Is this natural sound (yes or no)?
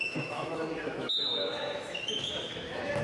no